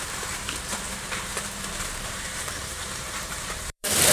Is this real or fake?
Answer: fake